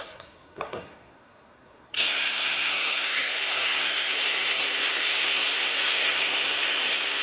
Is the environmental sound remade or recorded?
remade